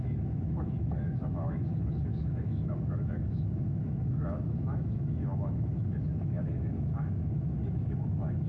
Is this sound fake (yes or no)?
yes